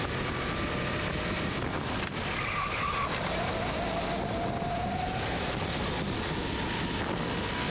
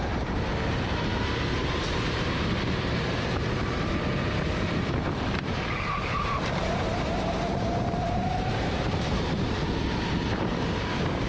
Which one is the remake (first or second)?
second